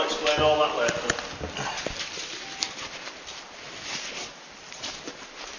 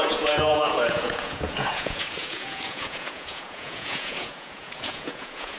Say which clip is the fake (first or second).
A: second